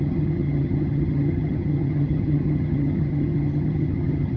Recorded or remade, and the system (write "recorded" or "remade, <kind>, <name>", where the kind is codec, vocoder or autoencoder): remade, vocoder, HiFi-GAN